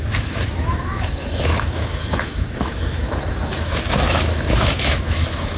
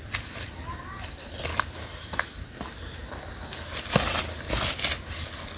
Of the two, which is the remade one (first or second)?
first